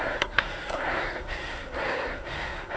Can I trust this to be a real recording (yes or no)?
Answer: no